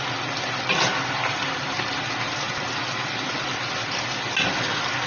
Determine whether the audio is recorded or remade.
recorded